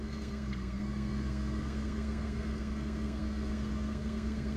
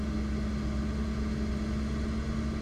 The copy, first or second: first